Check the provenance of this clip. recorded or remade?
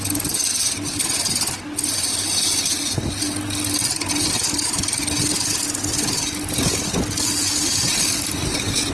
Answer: recorded